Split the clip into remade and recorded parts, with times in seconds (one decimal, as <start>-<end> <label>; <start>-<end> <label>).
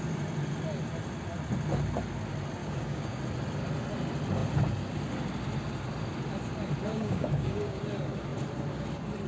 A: 0.0-2.6 recorded; 2.6-3.2 remade; 3.2-6.9 recorded; 6.9-7.8 remade; 7.8-9.3 recorded